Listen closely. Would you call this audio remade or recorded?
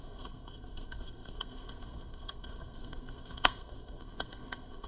remade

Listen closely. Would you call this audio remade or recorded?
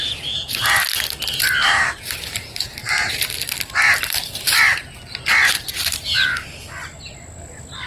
recorded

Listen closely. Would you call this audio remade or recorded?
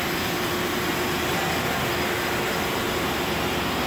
recorded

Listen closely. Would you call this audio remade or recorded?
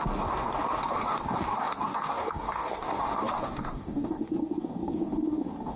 remade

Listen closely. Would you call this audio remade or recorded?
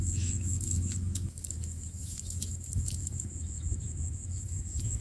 remade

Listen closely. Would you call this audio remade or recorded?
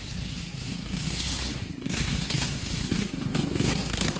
remade